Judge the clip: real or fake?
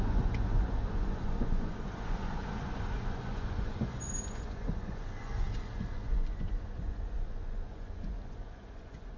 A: fake